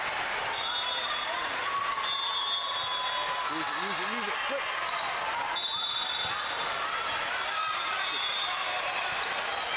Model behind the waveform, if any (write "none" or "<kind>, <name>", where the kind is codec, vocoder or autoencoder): none